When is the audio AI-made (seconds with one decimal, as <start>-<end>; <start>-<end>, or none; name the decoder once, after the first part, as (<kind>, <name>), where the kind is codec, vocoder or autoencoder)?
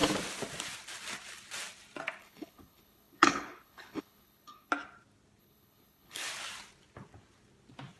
2.2-4.7 (codec, HILCodec); 5.4-6.3